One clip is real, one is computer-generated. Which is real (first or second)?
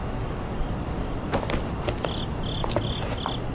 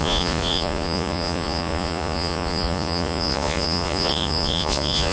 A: first